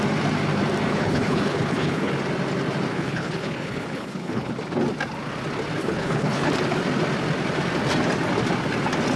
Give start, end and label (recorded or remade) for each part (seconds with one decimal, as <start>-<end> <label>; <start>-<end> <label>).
0.0-0.9 recorded; 0.9-2.1 remade; 2.1-2.9 recorded; 2.9-4.5 remade; 4.5-5.8 recorded; 5.8-6.5 remade; 6.5-9.2 recorded